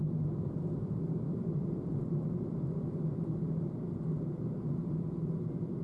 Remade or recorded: remade